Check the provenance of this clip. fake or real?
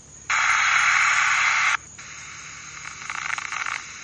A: real